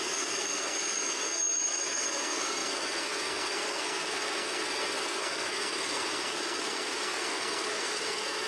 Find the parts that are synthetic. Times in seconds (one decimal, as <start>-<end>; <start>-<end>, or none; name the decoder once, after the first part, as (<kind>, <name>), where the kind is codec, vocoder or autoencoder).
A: 0.0-8.5 (codec, SNAC)